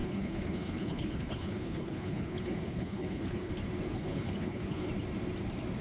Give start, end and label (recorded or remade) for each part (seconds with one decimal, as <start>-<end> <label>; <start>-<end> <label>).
0.0-3.5 remade; 3.5-3.9 recorded; 3.9-4.9 remade; 4.9-5.8 recorded